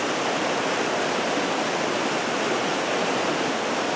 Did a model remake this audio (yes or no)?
no